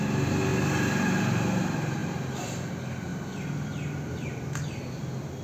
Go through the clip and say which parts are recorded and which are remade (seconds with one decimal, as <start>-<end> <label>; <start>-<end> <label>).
0.0-5.4 recorded